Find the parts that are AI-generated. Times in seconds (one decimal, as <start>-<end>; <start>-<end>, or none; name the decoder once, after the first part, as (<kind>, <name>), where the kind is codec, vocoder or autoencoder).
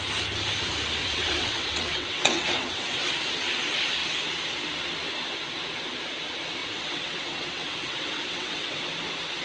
1.0-3.1 (vocoder, WaveNeXt); 6.6-8.9